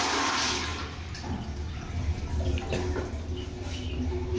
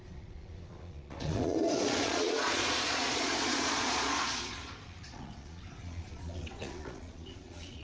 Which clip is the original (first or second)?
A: first